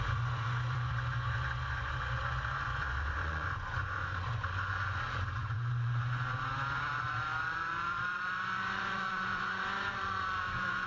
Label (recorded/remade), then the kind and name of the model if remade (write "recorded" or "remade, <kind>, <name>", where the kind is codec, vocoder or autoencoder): remade, vocoder, Vocos